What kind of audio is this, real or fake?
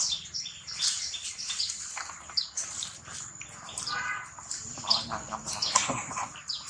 real